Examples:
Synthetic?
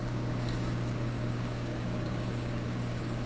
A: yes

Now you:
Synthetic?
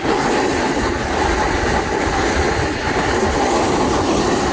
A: no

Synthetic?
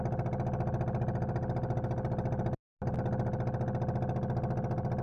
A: no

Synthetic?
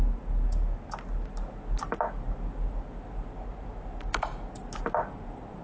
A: no